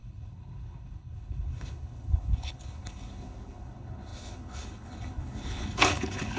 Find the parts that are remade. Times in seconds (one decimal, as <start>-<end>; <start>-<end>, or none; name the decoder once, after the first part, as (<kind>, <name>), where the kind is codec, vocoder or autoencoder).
0.0-6.4 (codec, HILCodec)